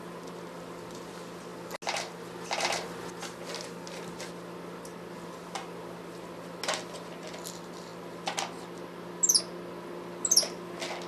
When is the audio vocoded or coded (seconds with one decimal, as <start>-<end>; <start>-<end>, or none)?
none

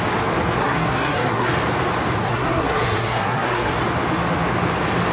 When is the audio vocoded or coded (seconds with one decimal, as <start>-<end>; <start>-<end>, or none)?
0.6-1.5; 2.2-3.7